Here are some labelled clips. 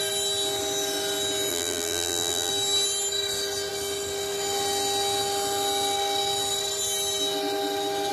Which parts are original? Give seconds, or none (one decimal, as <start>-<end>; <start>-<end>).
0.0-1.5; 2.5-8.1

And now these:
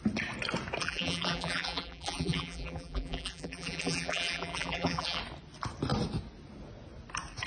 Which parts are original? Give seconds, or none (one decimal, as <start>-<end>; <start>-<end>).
0.0-0.8; 5.2-7.5

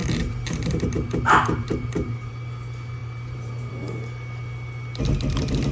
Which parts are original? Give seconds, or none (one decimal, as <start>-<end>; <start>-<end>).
2.3-3.0; 3.7-5.7

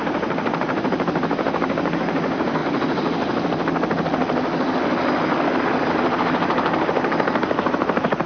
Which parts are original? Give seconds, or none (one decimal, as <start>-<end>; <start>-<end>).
2.6-5.6

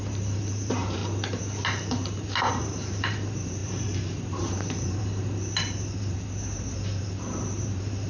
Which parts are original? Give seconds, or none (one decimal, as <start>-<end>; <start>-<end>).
1.0-2.5